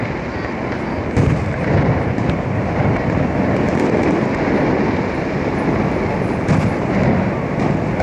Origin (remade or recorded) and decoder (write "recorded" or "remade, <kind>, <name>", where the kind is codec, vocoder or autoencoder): recorded